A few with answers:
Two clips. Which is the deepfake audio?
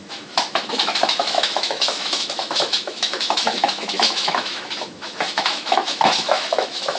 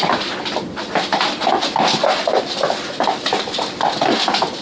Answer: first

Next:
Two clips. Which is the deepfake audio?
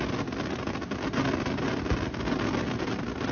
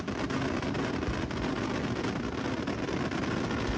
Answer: second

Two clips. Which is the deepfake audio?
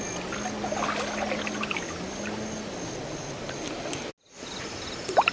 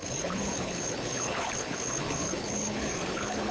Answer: second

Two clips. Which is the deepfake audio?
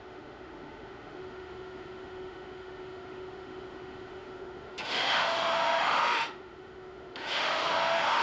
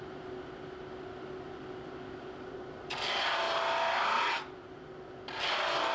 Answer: first